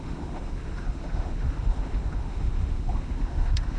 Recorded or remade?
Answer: remade